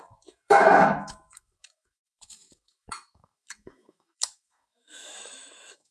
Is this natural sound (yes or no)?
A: no